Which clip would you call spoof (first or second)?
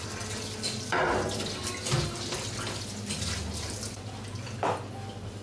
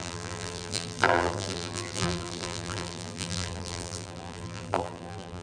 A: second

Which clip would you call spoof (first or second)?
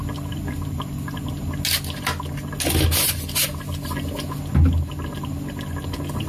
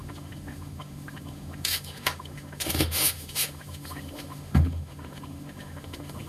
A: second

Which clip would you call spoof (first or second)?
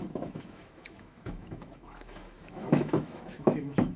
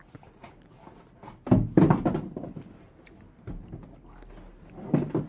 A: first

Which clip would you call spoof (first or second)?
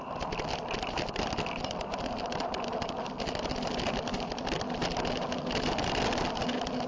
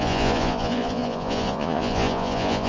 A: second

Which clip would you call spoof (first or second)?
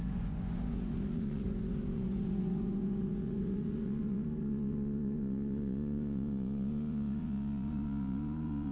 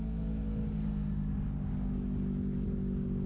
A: first